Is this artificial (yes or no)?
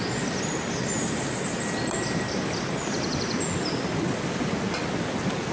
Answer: no